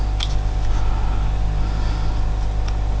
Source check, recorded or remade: recorded